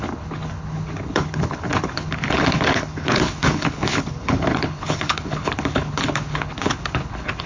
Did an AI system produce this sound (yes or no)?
yes